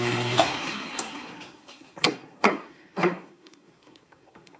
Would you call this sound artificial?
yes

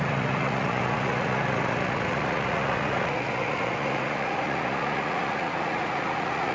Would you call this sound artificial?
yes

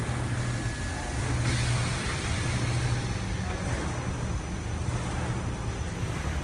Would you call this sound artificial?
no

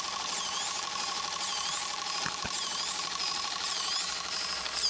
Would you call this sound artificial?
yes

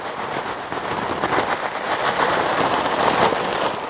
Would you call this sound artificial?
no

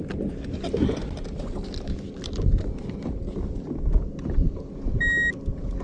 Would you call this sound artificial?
no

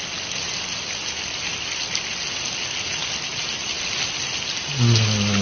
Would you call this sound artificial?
no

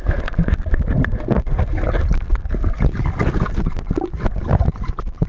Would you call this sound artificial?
no